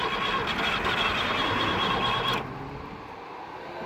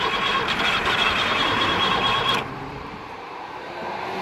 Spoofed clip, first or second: second